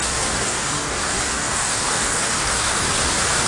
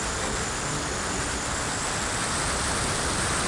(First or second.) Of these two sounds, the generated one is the first